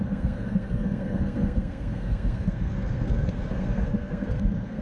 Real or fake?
fake